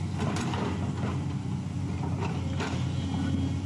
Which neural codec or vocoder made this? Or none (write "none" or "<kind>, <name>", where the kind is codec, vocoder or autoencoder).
none